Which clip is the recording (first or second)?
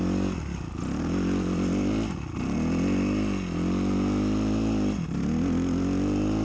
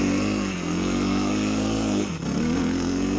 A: first